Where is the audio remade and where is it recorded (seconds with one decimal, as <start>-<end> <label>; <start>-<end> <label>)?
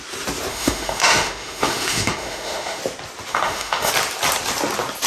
0.0-0.5 recorded; 0.5-2.8 remade; 2.8-3.3 recorded; 3.3-3.9 remade; 3.9-5.1 recorded